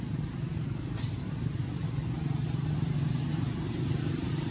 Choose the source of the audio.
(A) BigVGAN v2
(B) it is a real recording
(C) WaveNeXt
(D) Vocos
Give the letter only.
A